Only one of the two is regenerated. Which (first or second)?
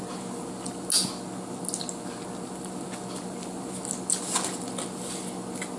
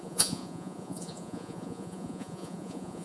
second